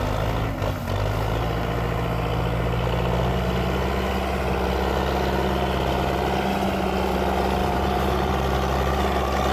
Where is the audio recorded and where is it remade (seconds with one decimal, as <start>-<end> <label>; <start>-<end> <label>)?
0.0-7.6 recorded; 7.6-8.3 remade; 8.3-9.5 recorded